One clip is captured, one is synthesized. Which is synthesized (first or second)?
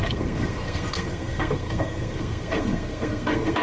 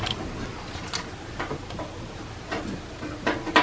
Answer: first